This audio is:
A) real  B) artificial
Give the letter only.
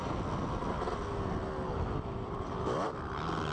A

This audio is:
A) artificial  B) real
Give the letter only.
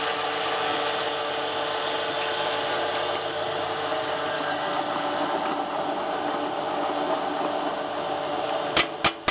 B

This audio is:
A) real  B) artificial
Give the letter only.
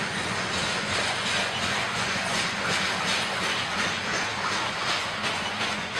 B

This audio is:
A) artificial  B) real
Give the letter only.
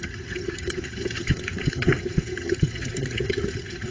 A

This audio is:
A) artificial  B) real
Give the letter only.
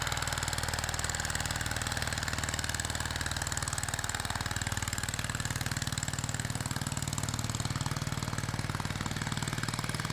B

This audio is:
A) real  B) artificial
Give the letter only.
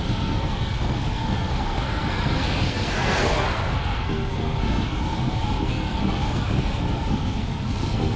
B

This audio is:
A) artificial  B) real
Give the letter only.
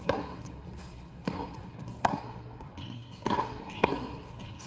A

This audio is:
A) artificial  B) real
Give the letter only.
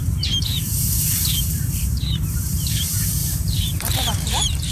A